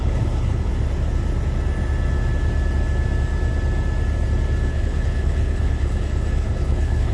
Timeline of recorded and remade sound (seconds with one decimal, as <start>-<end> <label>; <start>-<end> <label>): 0.0-0.7 remade; 0.7-4.7 recorded; 4.7-7.1 remade